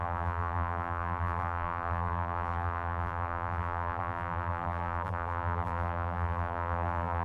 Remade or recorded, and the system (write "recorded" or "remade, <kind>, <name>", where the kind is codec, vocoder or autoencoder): remade, vocoder, BigVGAN v2